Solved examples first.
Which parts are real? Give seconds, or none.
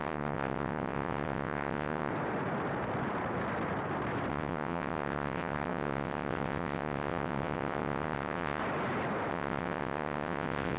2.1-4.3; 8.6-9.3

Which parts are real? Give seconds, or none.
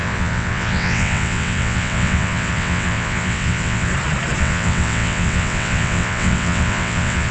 3.9-4.4